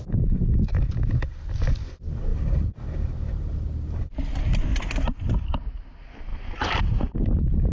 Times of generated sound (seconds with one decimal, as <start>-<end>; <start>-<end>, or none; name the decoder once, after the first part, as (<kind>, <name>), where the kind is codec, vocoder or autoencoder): 6.3-6.8 (vocoder, BigVGAN v2)

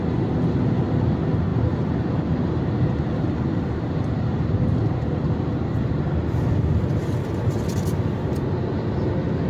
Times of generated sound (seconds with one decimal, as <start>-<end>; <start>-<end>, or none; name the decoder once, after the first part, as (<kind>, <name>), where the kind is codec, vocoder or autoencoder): 1.5-6.1 (vocoder, BigVGAN v2)